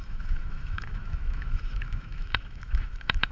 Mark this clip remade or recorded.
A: remade